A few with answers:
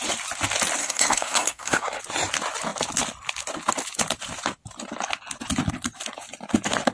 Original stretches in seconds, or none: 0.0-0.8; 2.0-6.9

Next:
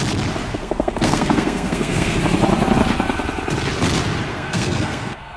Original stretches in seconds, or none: 0.0-0.5; 2.2-4.3

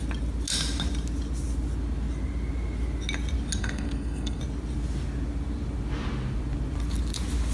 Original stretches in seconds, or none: 0.0-3.6; 4.4-7.5

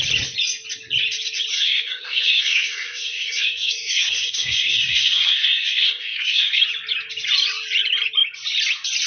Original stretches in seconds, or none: 0.0-1.5; 6.6-9.1